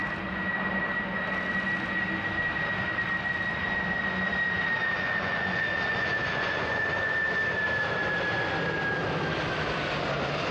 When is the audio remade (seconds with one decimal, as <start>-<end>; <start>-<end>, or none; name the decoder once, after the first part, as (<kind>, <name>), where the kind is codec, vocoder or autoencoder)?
4.8-7.3 (vocoder, Vocos)